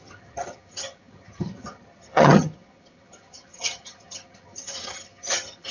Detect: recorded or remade remade